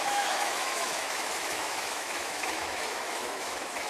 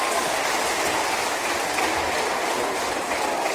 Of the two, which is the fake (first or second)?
first